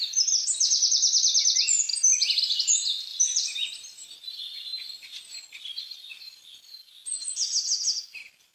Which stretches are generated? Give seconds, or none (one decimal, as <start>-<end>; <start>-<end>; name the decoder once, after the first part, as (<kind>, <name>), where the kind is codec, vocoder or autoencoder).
0.0-1.9 (vocoder, BigVGAN v2); 2.4-8.5